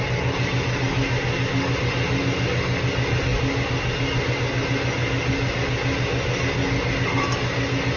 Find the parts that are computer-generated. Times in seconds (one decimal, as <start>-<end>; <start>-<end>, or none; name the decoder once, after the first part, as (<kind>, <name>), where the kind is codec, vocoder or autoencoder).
none